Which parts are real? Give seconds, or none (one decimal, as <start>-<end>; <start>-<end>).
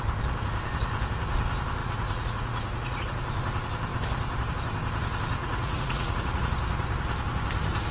0.0-1.8; 3.0-5.4; 6.4-7.9